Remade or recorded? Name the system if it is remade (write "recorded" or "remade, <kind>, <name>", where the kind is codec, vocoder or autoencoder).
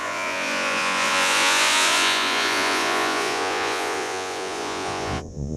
remade, vocoder, Vocos